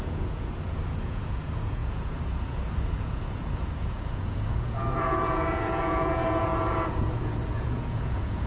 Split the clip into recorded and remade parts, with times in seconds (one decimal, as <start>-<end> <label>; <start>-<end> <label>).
0.0-8.5 remade